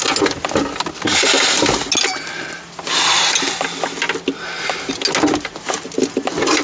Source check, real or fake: real